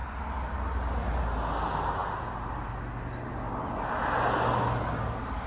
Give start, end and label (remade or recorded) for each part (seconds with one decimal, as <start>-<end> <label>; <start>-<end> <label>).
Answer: 0.0-5.5 recorded